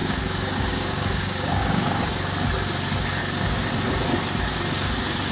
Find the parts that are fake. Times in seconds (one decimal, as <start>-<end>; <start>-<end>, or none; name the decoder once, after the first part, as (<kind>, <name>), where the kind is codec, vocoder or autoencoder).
0.0-2.1 (codec, DAC); 3.2-3.7